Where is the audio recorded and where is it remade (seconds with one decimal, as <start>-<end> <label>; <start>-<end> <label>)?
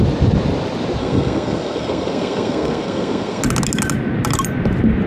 0.0-1.0 recorded; 1.0-3.4 remade; 3.4-5.1 recorded